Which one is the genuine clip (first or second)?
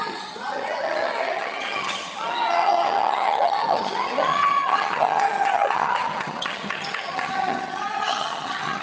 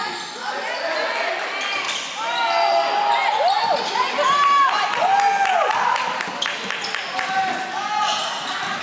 second